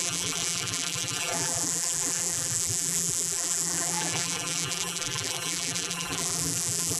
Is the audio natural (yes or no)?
no